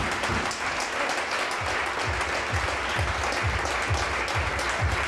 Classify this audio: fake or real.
real